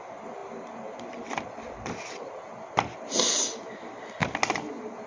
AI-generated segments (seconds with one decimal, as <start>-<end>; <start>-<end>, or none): none

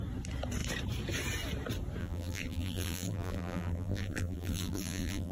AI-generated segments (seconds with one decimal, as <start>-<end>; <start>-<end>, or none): 2.0-5.3

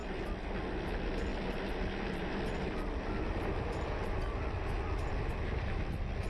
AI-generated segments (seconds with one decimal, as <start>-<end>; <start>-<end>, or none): none